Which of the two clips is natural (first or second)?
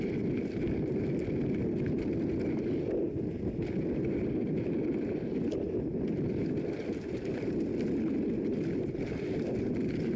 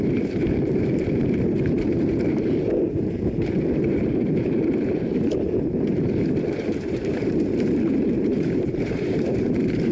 first